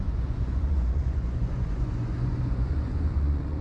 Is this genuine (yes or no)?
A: no